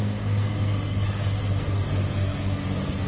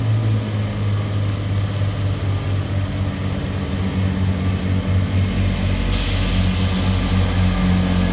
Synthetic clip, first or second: first